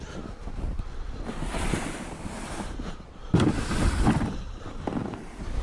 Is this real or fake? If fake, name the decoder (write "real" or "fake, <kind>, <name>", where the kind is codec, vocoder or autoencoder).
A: real